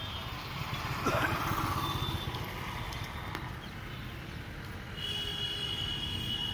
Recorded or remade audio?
recorded